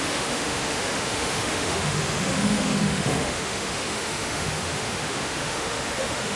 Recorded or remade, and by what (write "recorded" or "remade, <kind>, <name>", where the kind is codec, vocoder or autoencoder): remade, autoencoder, DAC-VAE